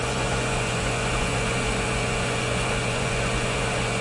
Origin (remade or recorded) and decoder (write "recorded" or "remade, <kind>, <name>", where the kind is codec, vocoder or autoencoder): remade, vocoder, Vocos